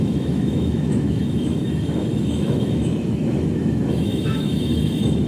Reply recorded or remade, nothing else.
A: remade